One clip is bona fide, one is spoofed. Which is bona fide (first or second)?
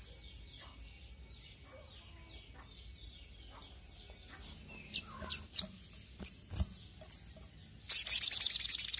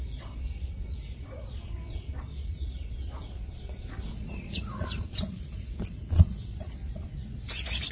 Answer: first